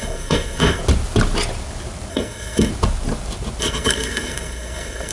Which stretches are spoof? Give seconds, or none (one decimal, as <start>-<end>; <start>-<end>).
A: 0.0-0.8; 2.1-2.7; 3.6-5.1